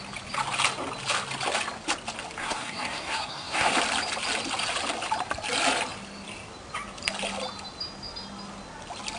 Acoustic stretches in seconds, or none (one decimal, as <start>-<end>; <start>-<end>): 0.0-2.4; 3.7-9.2